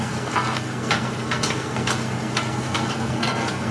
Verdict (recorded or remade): remade